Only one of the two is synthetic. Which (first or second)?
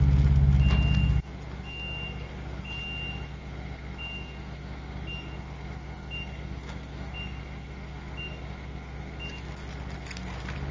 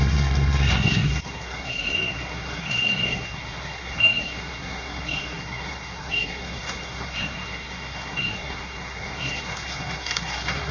second